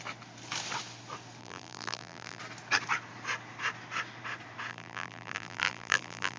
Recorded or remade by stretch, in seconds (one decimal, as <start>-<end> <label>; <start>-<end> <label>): 0.0-1.4 recorded; 1.4-2.4 remade; 2.4-4.7 recorded; 4.7-6.4 remade

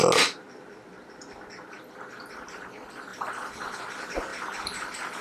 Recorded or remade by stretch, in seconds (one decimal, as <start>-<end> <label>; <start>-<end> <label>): 0.0-3.1 recorded; 3.1-3.8 remade; 3.8-4.3 recorded; 4.3-5.2 remade

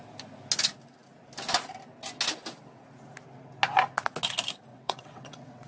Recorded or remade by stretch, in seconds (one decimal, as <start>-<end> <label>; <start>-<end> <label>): 0.0-4.7 recorded; 4.7-5.7 remade

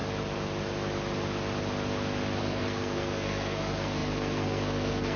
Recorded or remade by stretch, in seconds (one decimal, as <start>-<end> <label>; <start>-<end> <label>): 0.0-2.4 recorded; 2.4-5.2 remade